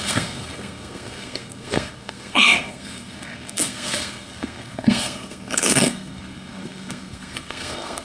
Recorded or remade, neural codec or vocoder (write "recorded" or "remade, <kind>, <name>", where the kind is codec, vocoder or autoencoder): remade, codec, SNAC